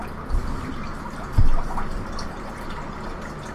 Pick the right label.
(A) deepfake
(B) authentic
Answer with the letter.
B